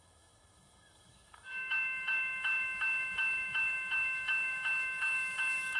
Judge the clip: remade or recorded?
remade